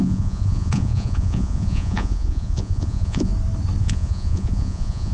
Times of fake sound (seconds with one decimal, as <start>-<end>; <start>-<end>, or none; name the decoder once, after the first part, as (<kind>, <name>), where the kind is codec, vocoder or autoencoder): 0.0-3.3 (vocoder, Vocos); 3.8-5.1